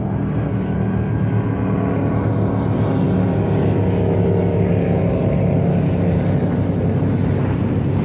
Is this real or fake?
real